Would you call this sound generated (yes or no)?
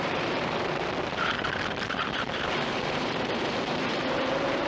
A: yes